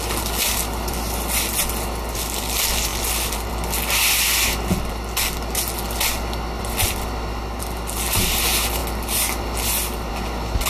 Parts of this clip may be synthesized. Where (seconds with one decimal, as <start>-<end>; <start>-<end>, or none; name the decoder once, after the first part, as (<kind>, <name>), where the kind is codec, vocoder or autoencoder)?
none